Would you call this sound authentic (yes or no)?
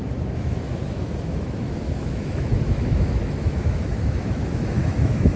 no